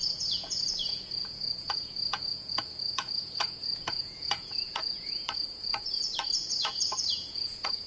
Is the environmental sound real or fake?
fake